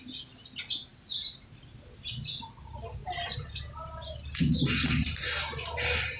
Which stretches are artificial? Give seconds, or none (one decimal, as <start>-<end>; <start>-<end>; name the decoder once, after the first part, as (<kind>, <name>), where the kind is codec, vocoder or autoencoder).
none